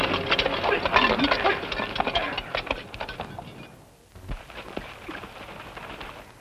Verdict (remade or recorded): recorded